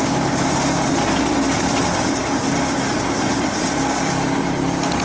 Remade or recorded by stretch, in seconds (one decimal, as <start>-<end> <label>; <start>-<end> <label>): 0.0-5.0 recorded